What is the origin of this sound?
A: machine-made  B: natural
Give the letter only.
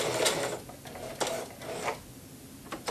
B